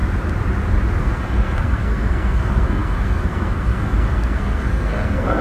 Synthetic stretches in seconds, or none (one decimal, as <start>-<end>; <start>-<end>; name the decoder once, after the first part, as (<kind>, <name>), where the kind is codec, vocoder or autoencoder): 1.0-5.4 (codec, SNAC)

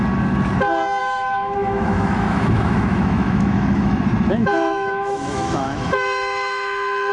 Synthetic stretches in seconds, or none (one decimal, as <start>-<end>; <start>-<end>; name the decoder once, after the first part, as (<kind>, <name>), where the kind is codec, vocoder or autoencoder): 1.0-4.0 (autoencoder, DAC-VAE); 4.4-7.1

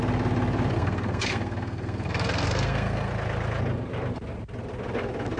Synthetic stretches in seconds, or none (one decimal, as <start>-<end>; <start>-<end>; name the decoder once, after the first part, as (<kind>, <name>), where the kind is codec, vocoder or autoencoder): 0.7-3.1 (codec, SNAC)

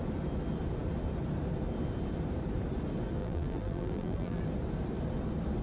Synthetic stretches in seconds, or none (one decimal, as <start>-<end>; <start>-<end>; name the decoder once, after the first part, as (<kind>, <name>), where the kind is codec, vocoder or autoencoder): 3.2-4.4 (vocoder, BigVGAN v2)

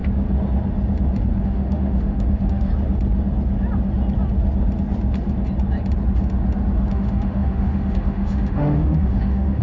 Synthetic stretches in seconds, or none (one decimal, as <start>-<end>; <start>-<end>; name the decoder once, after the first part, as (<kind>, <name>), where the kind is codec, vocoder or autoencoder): 1.4-2.7 (autoencoder, DAC-VAE); 6.9-9.6

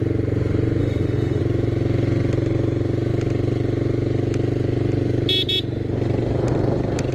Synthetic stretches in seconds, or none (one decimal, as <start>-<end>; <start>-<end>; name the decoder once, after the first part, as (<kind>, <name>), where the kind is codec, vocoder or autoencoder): 0.8-1.4 (autoencoder, DAC-VAE)

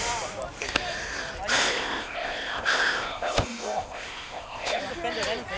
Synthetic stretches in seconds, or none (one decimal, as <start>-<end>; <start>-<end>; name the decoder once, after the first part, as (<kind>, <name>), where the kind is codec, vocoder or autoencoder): 1.6-4.8 (codec, ZipCodec)